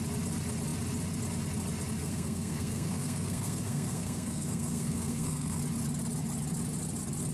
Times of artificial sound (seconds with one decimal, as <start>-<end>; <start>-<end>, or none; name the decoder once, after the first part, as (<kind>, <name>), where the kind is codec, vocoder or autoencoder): 2.0-5.6 (codec, SNAC)